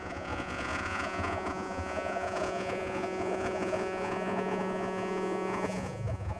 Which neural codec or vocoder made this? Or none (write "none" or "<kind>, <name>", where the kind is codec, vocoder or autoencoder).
vocoder, Vocos